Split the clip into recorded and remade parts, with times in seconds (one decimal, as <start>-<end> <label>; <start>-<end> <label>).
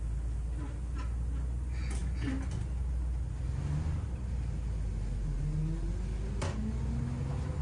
0.0-7.6 recorded